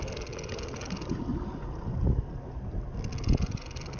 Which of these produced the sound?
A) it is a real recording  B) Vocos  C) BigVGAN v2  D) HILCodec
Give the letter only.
A